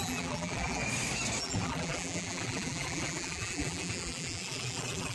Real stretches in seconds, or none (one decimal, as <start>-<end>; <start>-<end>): 0.8-1.4